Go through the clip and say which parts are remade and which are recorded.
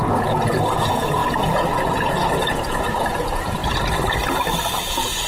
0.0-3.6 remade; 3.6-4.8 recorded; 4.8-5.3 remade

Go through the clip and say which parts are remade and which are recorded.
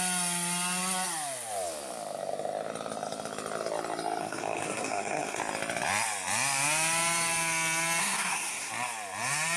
0.0-4.2 recorded; 4.2-5.4 remade; 5.4-8.0 recorded; 8.0-8.7 remade; 8.7-9.6 recorded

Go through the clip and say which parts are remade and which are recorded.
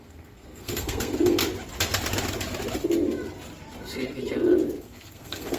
0.0-1.4 remade; 1.4-4.8 recorded; 4.8-5.6 remade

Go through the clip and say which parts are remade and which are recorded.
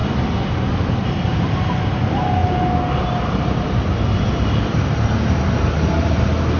0.0-6.6 recorded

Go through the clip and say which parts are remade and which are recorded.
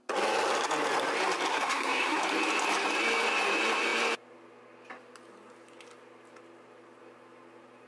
0.0-1.5 recorded; 1.5-2.2 remade; 2.2-7.9 recorded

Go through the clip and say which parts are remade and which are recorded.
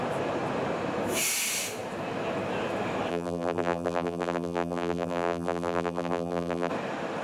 0.0-3.1 recorded; 3.1-6.7 remade; 6.7-7.2 recorded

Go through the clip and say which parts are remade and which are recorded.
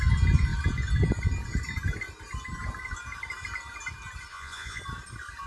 0.0-4.3 recorded; 4.3-4.8 remade; 4.8-5.5 recorded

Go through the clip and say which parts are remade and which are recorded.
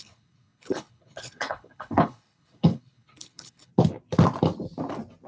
0.0-3.7 remade; 3.7-5.3 recorded